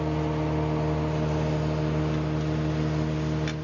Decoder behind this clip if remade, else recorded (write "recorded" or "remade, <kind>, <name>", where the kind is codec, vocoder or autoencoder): recorded